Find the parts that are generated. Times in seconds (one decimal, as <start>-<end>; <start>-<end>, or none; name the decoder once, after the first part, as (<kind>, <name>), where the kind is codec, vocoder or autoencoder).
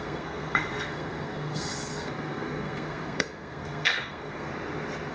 0.0-4.5 (codec, SNAC)